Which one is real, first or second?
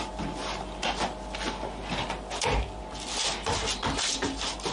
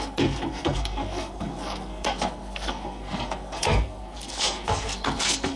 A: first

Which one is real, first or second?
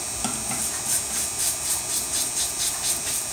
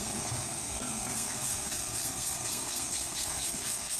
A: first